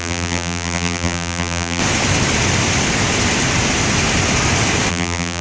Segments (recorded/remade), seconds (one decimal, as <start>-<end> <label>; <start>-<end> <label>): 0.0-1.8 remade; 1.8-4.9 recorded; 4.9-5.4 remade